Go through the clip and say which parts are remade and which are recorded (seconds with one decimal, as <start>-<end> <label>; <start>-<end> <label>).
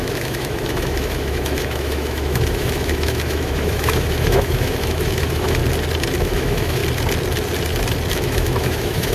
0.0-5.6 remade; 5.6-6.2 recorded; 6.2-6.8 remade; 6.8-8.1 recorded; 8.1-9.1 remade